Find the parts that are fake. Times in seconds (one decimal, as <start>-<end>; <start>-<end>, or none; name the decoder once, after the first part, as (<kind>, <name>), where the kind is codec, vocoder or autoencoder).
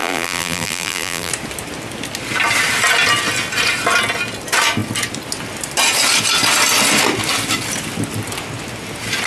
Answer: 0.0-1.3 (vocoder, BigVGAN v2)